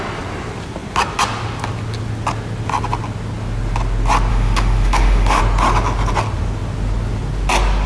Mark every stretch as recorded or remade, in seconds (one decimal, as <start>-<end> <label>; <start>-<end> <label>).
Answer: 0.0-4.3 recorded; 4.3-5.4 remade; 5.4-7.9 recorded